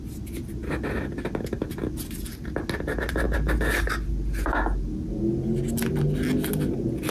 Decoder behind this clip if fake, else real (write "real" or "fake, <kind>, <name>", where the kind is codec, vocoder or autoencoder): real